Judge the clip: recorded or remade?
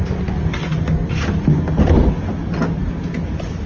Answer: recorded